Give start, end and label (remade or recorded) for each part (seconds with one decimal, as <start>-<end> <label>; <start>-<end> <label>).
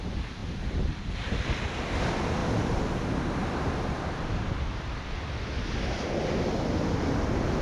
0.0-7.6 recorded